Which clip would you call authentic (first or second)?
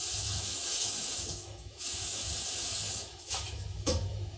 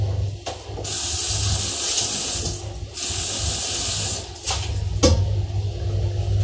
second